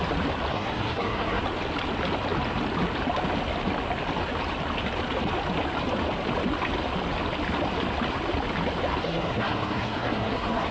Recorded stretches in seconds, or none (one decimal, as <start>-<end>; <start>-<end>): 0.0-0.5; 1.4-9.0